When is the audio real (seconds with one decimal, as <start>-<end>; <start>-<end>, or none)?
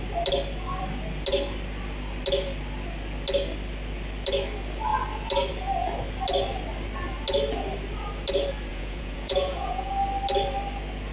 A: 0.0-8.7; 9.9-11.1